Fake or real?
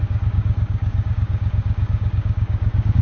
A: fake